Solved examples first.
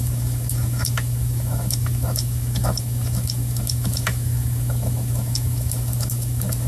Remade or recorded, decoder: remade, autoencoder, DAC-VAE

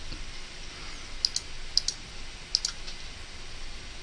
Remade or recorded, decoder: recorded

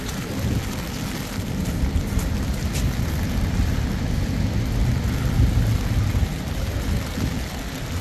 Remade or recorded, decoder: recorded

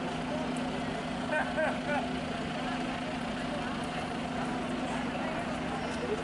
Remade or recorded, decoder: recorded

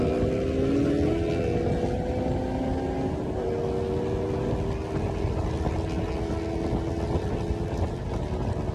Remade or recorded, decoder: recorded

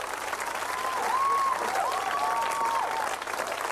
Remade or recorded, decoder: recorded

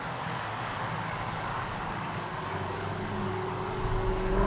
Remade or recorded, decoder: remade, codec, DAC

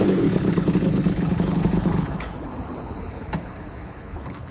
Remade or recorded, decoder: remade, codec, HILCodec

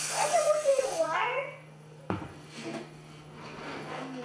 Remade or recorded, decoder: remade, codec, SNAC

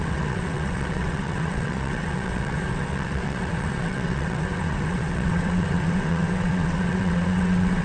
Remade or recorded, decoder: remade, vocoder, WaveNeXt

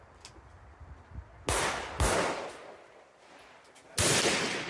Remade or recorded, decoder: recorded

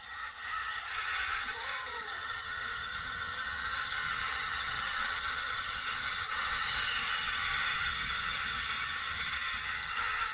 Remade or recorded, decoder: remade, vocoder, HiFi-GAN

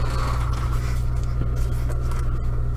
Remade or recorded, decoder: recorded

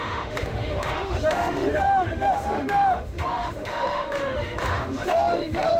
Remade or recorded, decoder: remade, autoencoder, DAC-VAE